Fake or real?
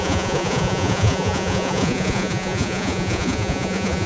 fake